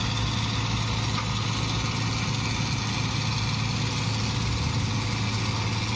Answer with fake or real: real